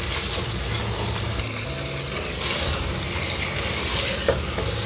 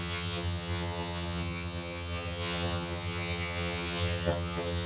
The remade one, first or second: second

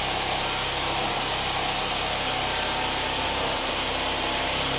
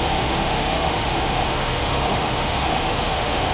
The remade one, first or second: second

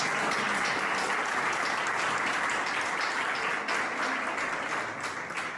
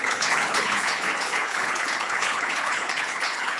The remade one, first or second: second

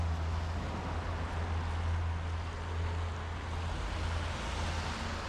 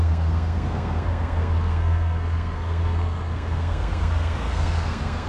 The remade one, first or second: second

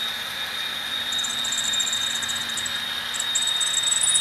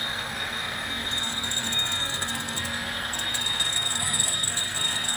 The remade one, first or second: second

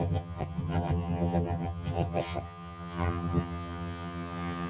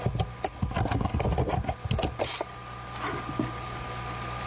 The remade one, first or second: first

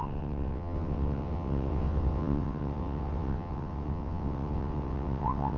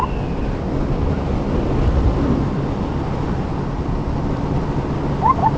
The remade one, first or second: first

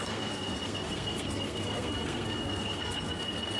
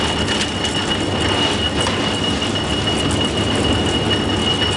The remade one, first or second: first